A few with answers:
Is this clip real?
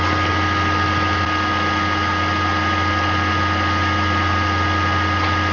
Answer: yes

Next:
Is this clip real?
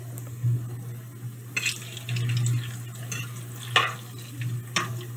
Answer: yes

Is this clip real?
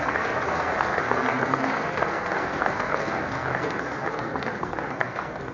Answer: no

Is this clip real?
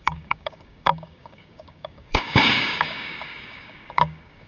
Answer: no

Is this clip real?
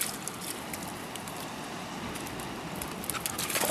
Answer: yes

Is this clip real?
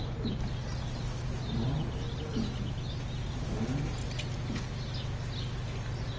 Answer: yes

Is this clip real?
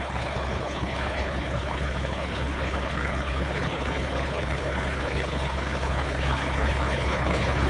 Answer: no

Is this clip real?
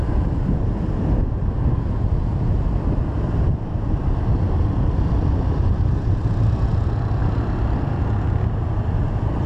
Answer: yes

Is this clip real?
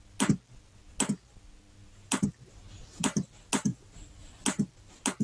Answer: yes